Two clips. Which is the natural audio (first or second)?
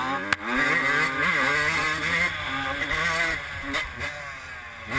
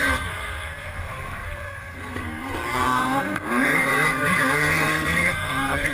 first